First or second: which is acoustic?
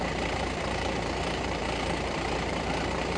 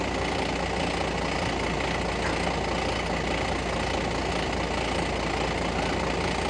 second